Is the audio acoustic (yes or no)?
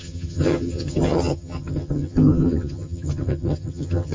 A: no